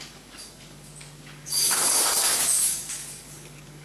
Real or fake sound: fake